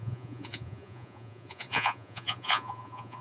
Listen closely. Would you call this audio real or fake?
fake